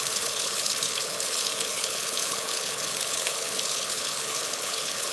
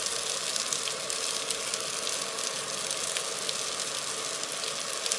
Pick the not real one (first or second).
first